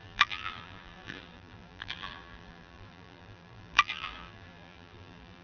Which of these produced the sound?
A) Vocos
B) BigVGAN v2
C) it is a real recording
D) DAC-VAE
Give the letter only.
B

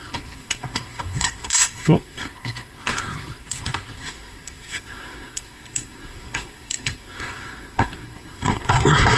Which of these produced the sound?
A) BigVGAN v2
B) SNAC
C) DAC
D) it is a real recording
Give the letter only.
B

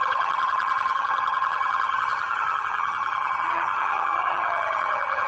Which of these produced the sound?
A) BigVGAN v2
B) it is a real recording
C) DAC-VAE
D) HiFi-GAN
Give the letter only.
D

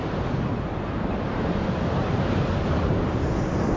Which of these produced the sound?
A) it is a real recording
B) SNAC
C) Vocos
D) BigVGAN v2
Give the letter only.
A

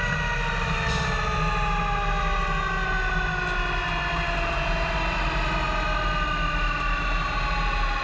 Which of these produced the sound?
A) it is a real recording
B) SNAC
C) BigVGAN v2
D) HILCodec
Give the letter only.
A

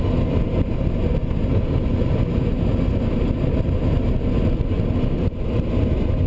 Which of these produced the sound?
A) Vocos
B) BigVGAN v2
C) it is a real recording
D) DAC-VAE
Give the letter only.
C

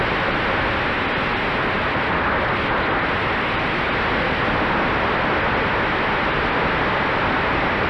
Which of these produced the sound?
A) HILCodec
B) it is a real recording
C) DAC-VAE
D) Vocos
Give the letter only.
B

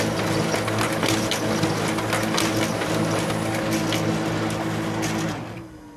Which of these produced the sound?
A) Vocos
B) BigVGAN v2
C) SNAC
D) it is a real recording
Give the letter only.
D